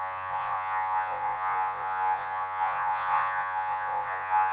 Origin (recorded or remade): remade